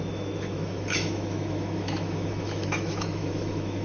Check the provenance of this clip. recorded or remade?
remade